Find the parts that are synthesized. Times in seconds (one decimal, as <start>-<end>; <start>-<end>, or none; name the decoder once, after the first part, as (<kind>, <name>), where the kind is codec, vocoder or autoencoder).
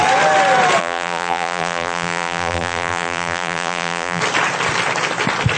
0.8-4.2 (vocoder, BigVGAN v2)